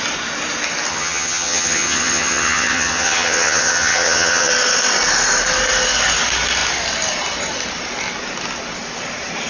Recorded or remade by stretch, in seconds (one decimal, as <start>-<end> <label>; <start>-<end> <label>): 0.0-0.9 recorded; 0.9-4.5 remade; 4.5-9.5 recorded